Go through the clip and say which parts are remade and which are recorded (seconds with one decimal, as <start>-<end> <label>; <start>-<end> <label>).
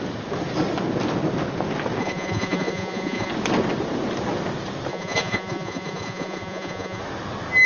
0.0-2.0 recorded; 2.0-3.3 remade; 3.3-4.9 recorded; 4.9-7.0 remade; 7.0-7.7 recorded